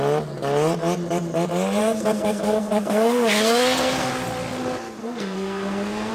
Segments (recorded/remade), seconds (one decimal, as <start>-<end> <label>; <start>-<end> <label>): 0.0-1.8 recorded; 1.8-4.1 remade; 4.1-5.0 recorded; 5.0-6.1 remade